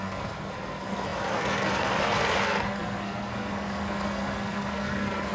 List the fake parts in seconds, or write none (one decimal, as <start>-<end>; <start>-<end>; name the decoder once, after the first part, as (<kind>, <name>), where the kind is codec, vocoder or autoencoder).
0.0-5.3 (codec, SNAC)